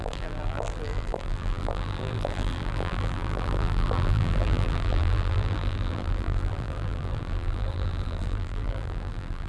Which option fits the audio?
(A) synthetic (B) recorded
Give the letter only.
A